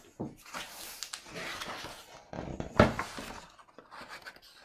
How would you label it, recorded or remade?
recorded